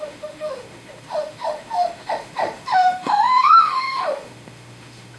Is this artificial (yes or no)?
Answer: yes